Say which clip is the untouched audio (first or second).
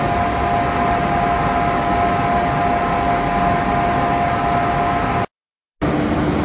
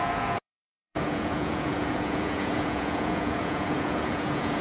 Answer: first